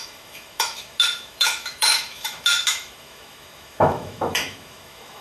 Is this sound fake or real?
fake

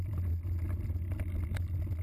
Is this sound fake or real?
real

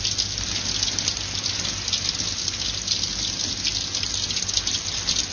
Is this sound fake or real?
real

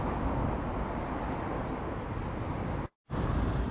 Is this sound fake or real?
real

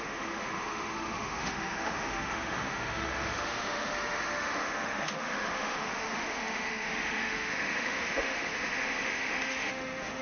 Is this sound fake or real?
fake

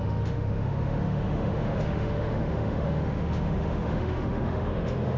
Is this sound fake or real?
fake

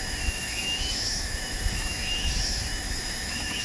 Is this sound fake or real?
fake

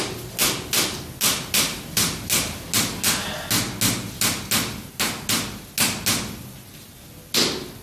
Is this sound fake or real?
real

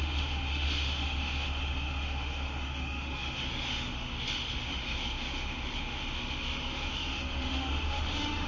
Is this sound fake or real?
fake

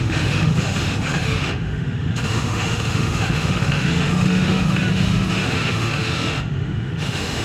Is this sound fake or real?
fake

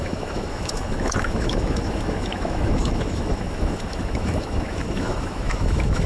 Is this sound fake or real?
fake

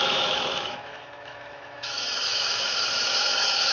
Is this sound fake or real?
fake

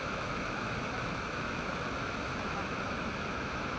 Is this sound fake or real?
fake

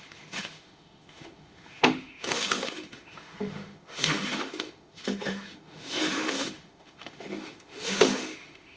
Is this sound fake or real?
fake